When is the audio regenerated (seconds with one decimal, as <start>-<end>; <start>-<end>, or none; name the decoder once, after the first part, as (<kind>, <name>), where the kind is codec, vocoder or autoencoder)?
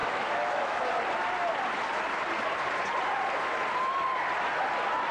0.0-0.8 (autoencoder, DAC-VAE)